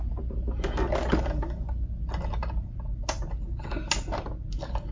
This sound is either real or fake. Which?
real